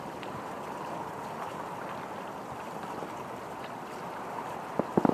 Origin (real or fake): real